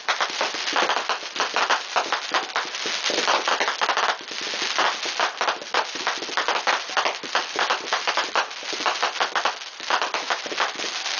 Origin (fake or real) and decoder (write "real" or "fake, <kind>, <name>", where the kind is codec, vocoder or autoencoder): real